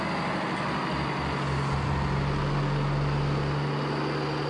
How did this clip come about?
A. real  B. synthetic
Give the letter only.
A